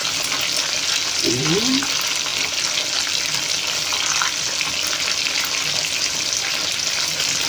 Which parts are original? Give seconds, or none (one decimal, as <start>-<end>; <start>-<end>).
0.0-7.5